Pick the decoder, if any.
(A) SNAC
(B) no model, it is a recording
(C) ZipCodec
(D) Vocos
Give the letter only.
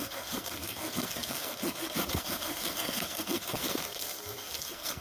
A